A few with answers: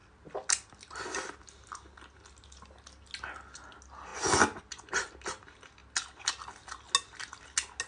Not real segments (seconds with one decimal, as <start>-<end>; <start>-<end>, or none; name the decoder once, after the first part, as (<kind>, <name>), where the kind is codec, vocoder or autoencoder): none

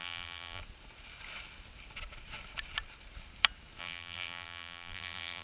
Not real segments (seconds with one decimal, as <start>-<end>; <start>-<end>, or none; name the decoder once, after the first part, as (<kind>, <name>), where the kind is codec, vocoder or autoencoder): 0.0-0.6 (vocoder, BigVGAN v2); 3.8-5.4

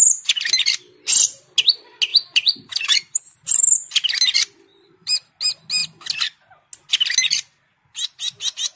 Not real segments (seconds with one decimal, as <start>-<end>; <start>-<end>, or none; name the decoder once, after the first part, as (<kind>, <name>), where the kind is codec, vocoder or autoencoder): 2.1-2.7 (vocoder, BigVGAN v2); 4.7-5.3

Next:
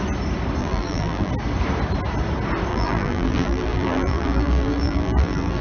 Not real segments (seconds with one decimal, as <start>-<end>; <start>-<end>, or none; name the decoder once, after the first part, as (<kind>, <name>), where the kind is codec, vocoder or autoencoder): 0.6-1.3 (vocoder, BigVGAN v2); 2.7-5.6

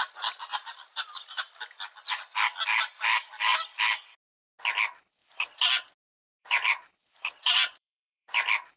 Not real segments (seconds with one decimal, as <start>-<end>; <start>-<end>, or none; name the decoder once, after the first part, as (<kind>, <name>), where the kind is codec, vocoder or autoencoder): 0.5-1.4 (vocoder, BigVGAN v2); 5.2-5.7; 6.4-8.8